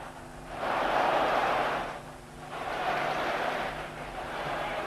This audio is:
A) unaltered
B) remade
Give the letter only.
B